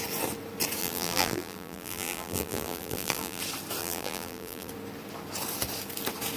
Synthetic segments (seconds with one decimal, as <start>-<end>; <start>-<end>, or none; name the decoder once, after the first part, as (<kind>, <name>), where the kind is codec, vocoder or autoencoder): 0.8-3.4 (vocoder, BigVGAN v2); 3.8-4.7